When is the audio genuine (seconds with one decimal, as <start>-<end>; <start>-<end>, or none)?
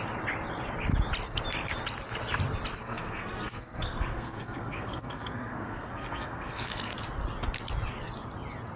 0.0-2.8; 6.9-8.8